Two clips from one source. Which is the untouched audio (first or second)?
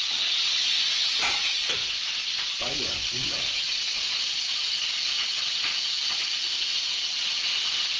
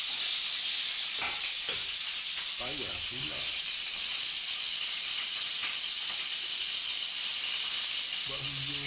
second